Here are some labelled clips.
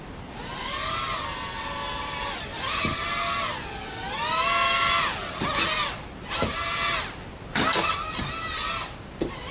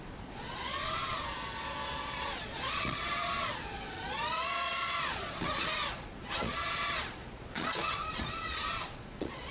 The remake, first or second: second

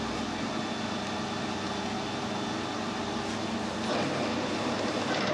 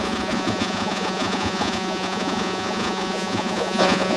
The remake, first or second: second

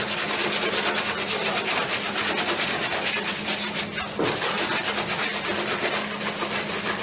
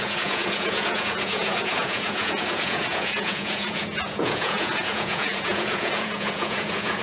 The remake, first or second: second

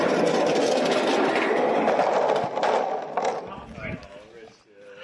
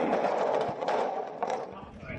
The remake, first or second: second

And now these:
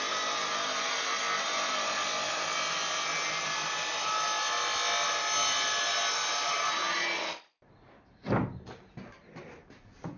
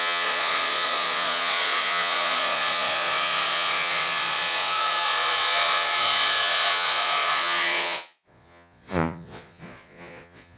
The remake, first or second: second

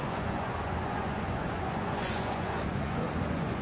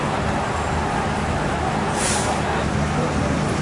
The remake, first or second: first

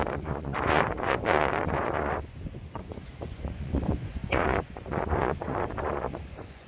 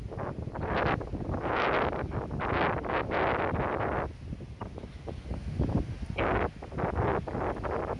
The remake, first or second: first